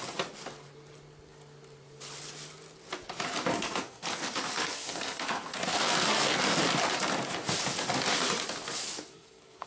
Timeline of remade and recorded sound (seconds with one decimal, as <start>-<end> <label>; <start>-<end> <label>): 0.0-3.5 recorded; 3.5-6.4 remade; 6.4-8.8 recorded; 8.8-9.7 remade